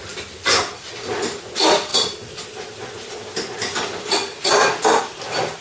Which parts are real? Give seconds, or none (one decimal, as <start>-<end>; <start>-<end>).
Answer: 0.0-5.6